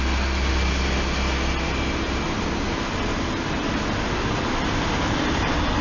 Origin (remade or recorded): recorded